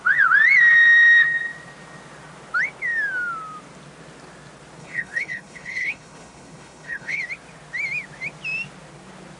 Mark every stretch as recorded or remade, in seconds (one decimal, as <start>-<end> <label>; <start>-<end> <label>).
0.0-4.8 recorded; 4.8-7.2 remade; 7.2-9.4 recorded